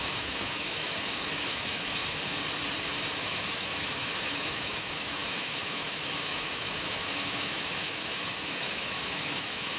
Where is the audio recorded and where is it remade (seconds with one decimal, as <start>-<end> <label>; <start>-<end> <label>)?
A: 0.0-2.0 remade; 2.0-3.2 recorded; 3.2-9.8 remade